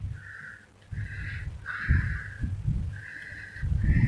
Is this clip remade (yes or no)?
no